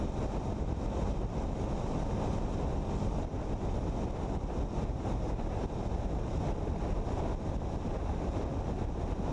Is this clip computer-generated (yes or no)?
no